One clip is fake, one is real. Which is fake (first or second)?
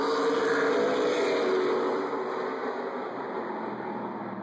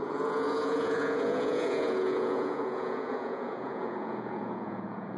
second